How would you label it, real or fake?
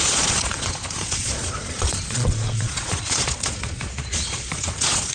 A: fake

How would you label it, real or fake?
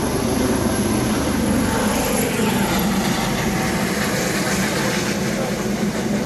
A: real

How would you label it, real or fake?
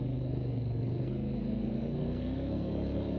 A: fake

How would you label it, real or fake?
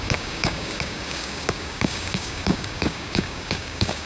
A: fake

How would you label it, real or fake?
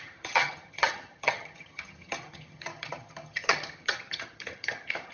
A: fake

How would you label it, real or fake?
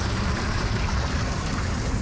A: fake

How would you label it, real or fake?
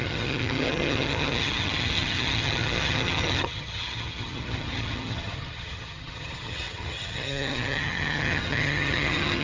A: fake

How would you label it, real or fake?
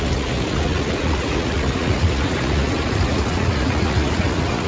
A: fake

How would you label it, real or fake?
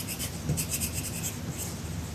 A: real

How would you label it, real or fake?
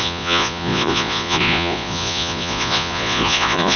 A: fake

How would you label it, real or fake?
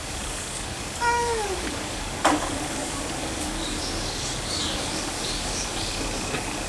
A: fake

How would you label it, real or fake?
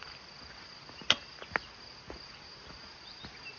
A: real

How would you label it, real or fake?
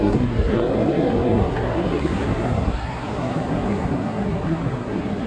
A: fake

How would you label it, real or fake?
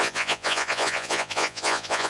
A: fake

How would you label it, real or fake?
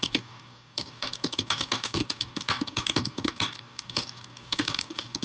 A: fake